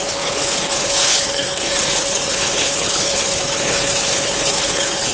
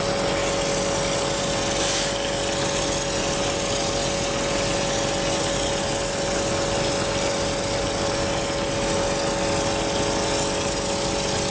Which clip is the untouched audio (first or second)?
second